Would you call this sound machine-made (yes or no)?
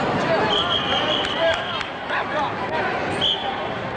no